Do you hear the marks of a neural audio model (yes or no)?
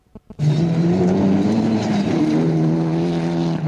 yes